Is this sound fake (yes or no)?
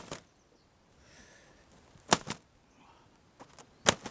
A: no